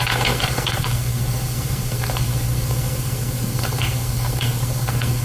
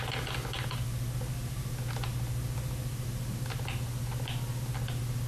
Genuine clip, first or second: second